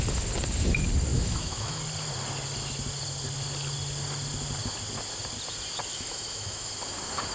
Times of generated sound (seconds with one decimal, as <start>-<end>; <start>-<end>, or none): 1.1-1.8; 5.9-6.7